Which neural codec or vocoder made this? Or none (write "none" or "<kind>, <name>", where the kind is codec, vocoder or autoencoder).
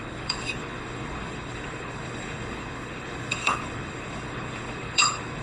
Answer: codec, HILCodec